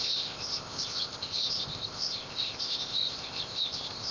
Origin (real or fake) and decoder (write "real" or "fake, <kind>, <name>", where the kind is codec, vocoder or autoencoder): fake, codec, ZipCodec